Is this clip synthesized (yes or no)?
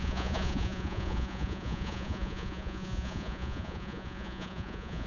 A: yes